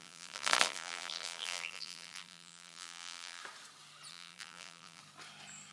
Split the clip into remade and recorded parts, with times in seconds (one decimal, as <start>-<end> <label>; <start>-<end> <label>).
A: 0.0-3.4 remade; 3.4-4.1 recorded; 4.1-5.0 remade; 5.0-5.7 recorded